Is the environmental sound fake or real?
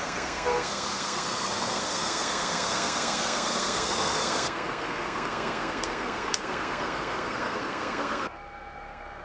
fake